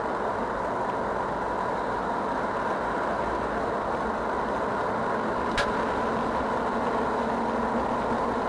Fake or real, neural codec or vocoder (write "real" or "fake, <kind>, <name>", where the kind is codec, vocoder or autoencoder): real